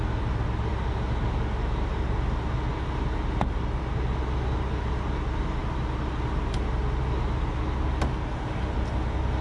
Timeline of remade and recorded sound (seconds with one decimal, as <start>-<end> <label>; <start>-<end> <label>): 0.0-9.4 recorded